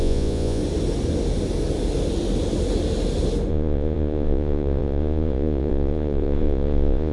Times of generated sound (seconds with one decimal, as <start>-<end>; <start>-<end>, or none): 0.0-0.6; 3.5-7.1